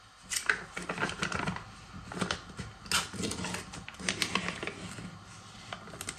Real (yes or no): yes